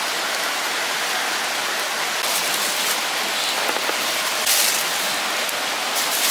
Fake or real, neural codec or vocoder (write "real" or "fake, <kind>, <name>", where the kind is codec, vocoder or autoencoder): real